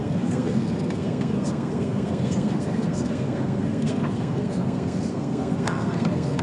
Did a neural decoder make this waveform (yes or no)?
yes